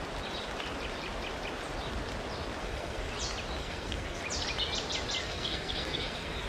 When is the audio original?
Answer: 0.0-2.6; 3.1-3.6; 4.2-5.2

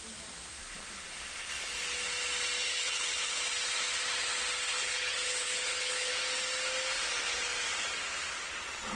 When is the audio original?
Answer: 0.0-2.6; 3.4-4.7; 6.1-9.0

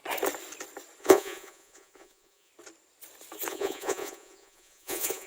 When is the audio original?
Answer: 0.0-1.0; 2.5-3.5